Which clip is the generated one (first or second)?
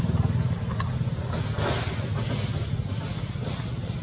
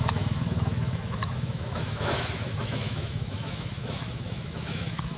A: second